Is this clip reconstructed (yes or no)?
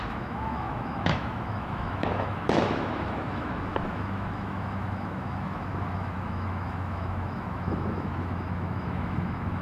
yes